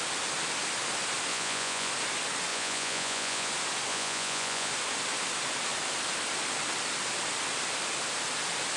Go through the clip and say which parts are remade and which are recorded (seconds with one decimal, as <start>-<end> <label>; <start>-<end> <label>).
0.0-1.3 recorded; 1.3-1.9 remade; 1.9-2.5 recorded; 2.5-3.5 remade; 3.5-3.9 recorded; 3.9-4.7 remade; 4.7-8.8 recorded